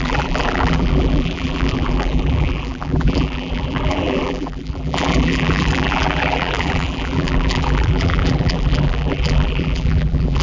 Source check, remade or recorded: remade